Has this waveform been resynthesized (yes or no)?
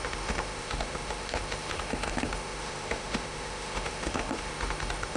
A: yes